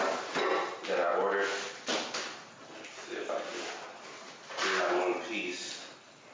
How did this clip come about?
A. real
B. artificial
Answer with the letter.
A